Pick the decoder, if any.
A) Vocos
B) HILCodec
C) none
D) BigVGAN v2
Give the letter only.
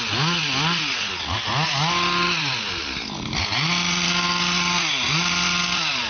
C